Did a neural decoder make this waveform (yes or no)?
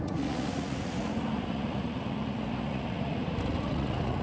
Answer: yes